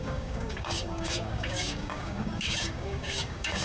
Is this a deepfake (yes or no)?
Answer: yes